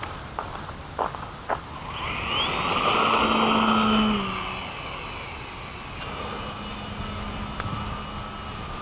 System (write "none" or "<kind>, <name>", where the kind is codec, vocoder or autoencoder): none